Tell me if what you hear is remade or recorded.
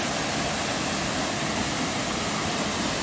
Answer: recorded